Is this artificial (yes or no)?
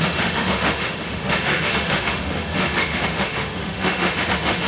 yes